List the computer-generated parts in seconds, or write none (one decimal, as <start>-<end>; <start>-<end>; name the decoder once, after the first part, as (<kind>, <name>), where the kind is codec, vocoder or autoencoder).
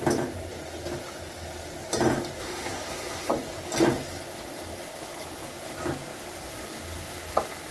2.4-3.3 (codec, SNAC)